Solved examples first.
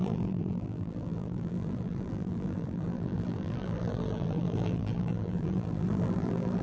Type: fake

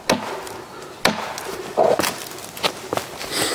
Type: real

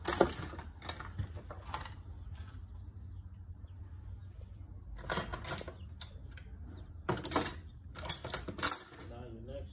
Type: real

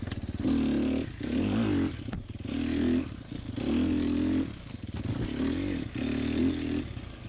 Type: real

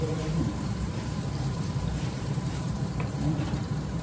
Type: fake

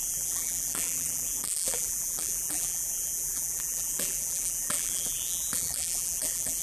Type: fake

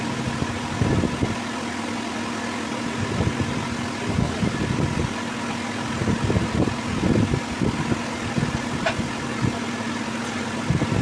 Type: real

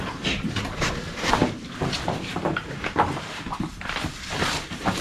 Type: fake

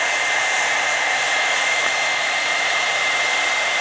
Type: fake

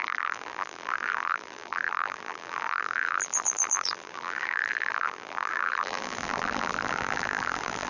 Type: fake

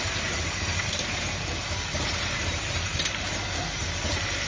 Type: fake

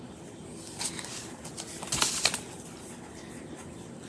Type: real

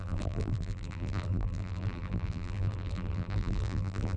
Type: fake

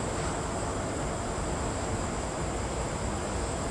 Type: fake